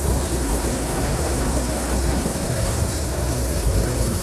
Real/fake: fake